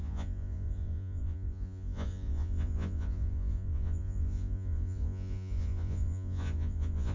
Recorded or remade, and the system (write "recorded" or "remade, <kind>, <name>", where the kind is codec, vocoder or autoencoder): remade, vocoder, Vocos